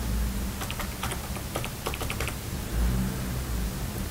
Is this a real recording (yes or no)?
yes